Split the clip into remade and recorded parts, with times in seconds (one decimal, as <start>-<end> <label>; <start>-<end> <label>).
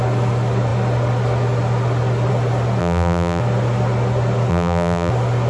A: 0.0-2.8 recorded; 2.8-3.4 remade; 3.4-4.5 recorded; 4.5-5.1 remade; 5.1-5.5 recorded